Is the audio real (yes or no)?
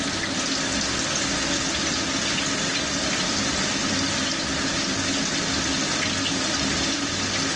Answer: yes